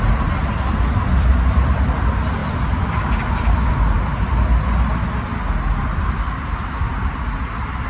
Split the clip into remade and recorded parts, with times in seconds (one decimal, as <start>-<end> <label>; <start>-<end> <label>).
0.0-7.9 recorded